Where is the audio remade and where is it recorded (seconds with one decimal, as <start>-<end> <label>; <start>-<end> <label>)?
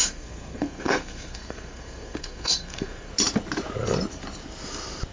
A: 0.0-3.1 remade; 3.1-5.1 recorded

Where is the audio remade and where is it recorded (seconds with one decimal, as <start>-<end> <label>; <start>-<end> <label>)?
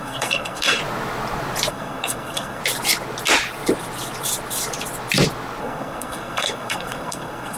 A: 0.0-0.8 remade; 0.8-1.7 recorded; 1.7-2.6 remade; 2.6-5.6 recorded; 5.6-7.6 remade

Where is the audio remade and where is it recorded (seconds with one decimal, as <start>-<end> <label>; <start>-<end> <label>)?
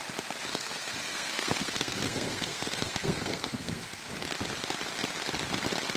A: 0.0-0.5 recorded; 0.5-4.1 remade; 4.1-6.0 recorded